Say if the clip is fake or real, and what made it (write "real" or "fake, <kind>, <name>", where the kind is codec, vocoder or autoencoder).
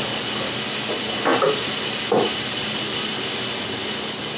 real